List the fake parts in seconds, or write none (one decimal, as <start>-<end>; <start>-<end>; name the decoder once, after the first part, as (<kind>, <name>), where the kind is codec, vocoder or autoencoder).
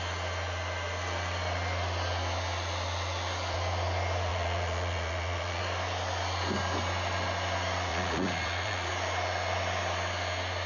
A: 4.3-5.6 (vocoder, Vocos); 7.9-8.9